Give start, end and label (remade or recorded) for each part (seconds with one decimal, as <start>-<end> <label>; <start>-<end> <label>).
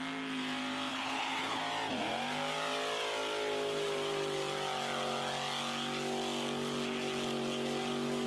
0.0-0.9 recorded; 0.9-1.6 remade; 1.6-8.3 recorded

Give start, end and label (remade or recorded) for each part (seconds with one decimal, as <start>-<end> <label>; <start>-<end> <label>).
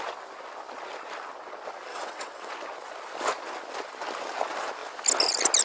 0.0-1.9 recorded; 1.9-2.5 remade; 2.5-5.6 recorded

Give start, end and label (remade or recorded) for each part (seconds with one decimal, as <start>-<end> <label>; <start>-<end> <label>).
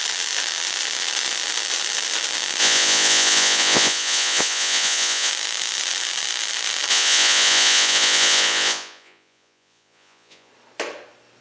0.0-2.6 recorded; 2.6-5.3 remade; 5.3-6.9 recorded; 6.9-10.5 remade; 10.5-11.4 recorded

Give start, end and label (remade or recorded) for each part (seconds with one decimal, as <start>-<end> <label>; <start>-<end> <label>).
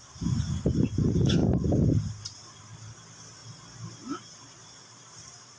0.0-5.6 recorded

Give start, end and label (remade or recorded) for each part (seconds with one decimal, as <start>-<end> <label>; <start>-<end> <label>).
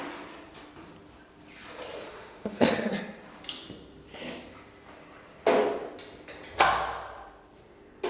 0.0-2.0 recorded; 2.0-2.9 remade; 2.9-8.1 recorded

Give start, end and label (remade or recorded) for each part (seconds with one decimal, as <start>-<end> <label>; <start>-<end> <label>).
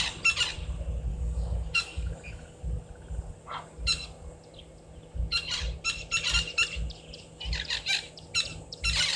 0.0-1.1 recorded; 1.1-2.6 remade; 2.6-9.2 recorded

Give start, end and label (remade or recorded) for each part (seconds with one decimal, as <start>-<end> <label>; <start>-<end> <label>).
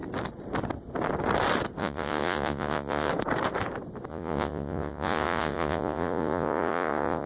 0.0-1.8 recorded; 1.8-3.1 remade; 3.1-4.1 recorded; 4.1-7.3 remade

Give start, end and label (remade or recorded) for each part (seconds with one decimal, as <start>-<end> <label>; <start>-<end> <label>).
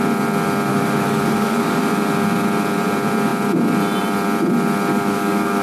0.0-0.7 recorded; 0.7-1.8 remade; 1.8-4.9 recorded; 4.9-5.6 remade